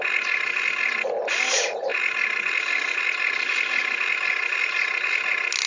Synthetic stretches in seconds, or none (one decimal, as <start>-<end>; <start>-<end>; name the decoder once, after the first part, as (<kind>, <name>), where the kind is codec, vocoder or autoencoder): none